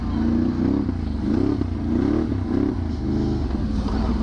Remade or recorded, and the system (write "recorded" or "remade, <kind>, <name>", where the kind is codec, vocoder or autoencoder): recorded